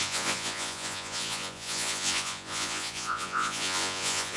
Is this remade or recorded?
remade